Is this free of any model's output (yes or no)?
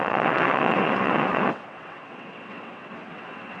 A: no